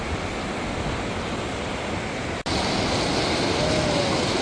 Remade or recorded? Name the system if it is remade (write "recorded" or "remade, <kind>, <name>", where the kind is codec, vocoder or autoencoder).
recorded